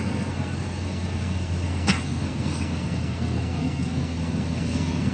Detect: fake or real fake